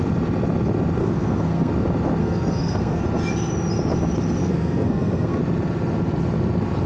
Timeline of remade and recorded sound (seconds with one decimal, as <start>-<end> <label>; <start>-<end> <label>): 0.0-1.0 recorded; 1.0-1.7 remade; 1.7-2.2 recorded; 2.2-3.0 remade; 3.0-4.4 recorded; 4.4-5.4 remade; 5.4-6.9 recorded